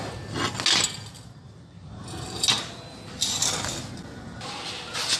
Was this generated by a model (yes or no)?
no